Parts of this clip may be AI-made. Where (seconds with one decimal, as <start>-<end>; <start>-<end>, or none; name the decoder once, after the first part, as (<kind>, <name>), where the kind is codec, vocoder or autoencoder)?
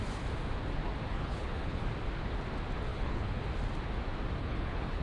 1.1-1.9 (codec, HILCodec); 2.9-3.4; 4.4-5.0